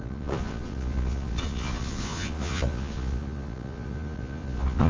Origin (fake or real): fake